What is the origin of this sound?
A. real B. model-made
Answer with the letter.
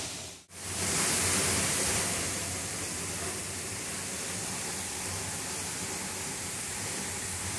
A